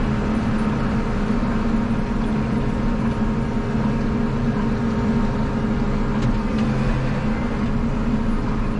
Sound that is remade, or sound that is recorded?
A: recorded